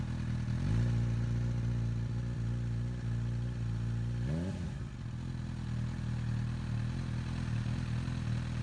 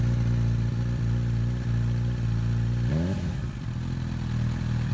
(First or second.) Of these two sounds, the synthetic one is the second